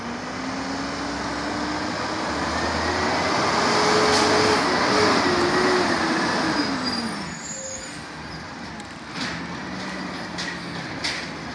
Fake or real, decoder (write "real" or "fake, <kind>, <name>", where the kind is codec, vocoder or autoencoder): real